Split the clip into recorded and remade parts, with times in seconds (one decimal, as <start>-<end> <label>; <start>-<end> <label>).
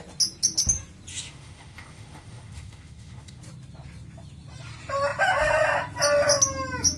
0.0-1.1 recorded; 1.1-3.4 remade; 3.4-7.0 recorded